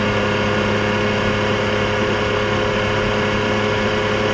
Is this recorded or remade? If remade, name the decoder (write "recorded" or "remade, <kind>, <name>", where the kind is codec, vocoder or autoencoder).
recorded